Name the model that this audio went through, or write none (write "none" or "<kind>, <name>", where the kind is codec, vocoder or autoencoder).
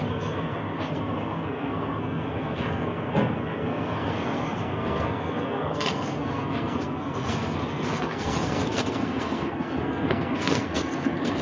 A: codec, SNAC